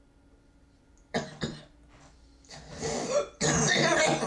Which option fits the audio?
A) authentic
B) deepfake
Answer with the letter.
B